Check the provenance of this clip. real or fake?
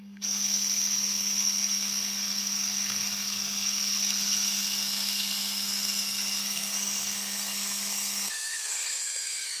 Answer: fake